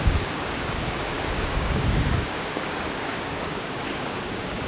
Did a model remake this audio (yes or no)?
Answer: yes